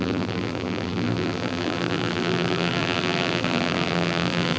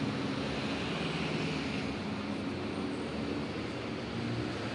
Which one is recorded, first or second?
second